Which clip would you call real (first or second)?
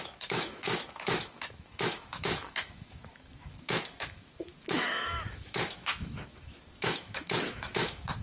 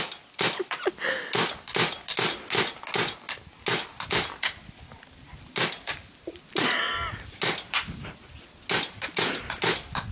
second